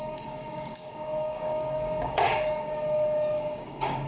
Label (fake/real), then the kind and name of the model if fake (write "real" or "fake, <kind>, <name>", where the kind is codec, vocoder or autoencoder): fake, codec, DAC